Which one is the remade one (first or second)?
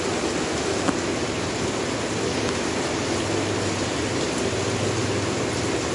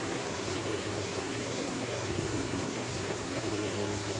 second